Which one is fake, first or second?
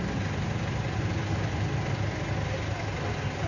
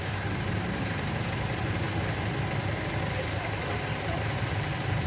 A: second